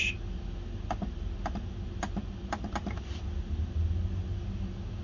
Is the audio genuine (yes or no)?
yes